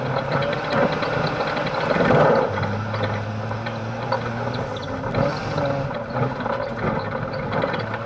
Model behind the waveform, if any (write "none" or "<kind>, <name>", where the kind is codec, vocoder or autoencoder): none